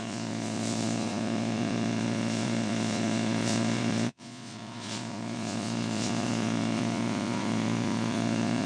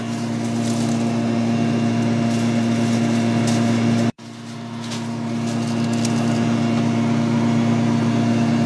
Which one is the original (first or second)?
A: second